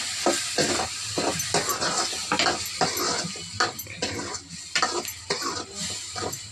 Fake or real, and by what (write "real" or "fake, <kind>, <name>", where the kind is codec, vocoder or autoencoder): real